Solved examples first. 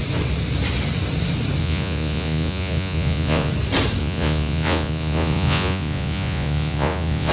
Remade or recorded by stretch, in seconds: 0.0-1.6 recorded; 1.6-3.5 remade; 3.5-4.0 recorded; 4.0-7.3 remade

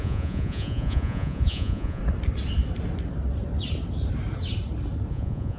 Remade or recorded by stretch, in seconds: 0.0-2.0 remade; 2.0-5.1 recorded; 5.1-5.6 remade

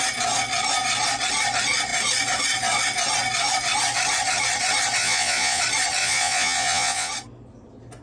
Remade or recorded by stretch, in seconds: 0.0-5.0 recorded; 5.0-5.6 remade; 5.6-6.0 recorded; 6.0-7.1 remade; 7.1-8.0 recorded

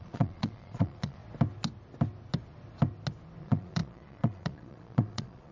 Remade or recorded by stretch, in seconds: 0.0-1.2 remade; 1.2-3.4 recorded; 3.4-5.5 remade

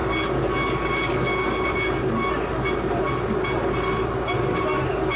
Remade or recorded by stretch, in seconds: 0.0-5.2 recorded

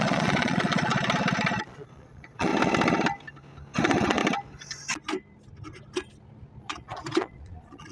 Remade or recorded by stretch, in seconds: 0.0-0.9 remade; 0.9-1.6 recorded; 1.6-2.5 remade; 2.5-3.8 recorded; 3.8-4.2 remade; 4.2-6.6 recorded; 6.6-7.9 remade

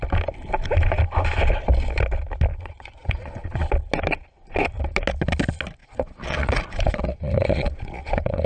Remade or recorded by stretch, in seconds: 0.0-2.5 recorded; 2.5-3.7 remade; 3.7-5.8 recorded; 5.8-8.5 remade